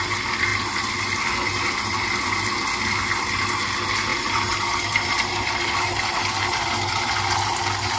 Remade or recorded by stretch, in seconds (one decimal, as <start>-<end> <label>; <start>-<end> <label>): 0.0-4.1 recorded; 4.1-6.7 remade; 6.7-8.0 recorded